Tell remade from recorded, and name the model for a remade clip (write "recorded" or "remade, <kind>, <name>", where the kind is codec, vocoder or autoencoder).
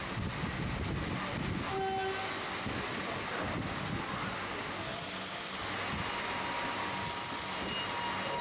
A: recorded